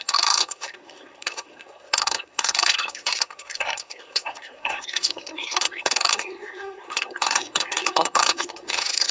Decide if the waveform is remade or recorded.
remade